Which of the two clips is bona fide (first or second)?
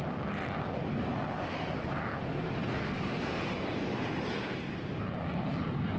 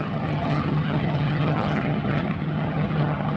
first